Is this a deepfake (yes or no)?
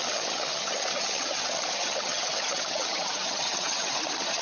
yes